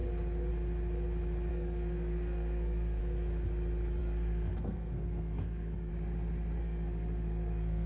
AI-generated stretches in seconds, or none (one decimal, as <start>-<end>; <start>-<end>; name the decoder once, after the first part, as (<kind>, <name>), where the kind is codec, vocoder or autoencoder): 1.5-3.0 (codec, SNAC); 4.0-5.9; 6.6-7.9